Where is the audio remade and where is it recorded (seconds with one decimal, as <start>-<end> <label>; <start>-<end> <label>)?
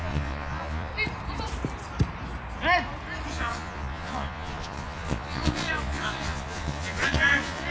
0.0-0.9 remade; 0.9-3.3 recorded; 3.3-7.7 remade